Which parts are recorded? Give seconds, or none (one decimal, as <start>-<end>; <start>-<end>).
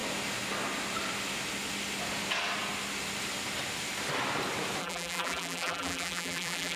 0.0-4.8